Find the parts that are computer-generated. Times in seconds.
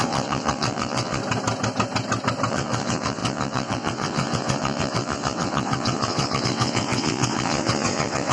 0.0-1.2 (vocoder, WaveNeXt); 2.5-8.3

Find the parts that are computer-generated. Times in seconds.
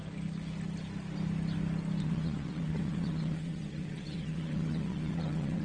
2.0-5.6 (vocoder, WaveNeXt)